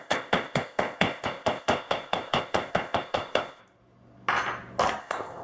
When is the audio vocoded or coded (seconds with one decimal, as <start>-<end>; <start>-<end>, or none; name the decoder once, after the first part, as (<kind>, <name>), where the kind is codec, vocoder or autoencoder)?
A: 0.0-3.6 (codec, ZipCodec); 5.0-5.4